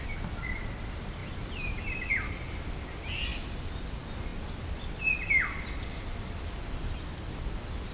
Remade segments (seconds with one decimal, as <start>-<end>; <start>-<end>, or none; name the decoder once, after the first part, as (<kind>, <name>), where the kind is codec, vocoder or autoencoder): none